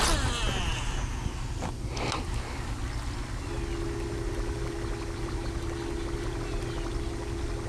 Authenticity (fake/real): real